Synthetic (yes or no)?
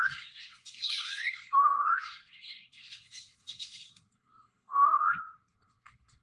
yes